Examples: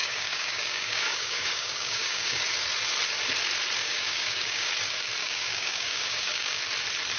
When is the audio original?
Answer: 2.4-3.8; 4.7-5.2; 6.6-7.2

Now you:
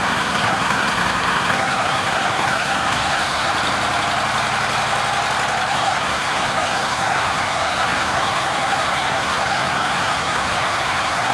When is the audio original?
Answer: 3.5-5.7

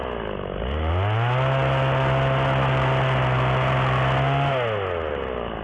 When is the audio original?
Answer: 0.0-5.6

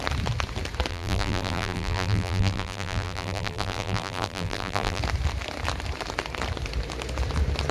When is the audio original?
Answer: 0.0-0.9; 5.0-7.7